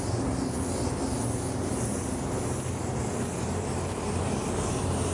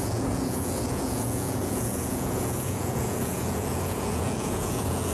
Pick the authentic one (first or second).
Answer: first